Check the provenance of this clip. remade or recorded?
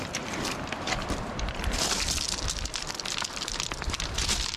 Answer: remade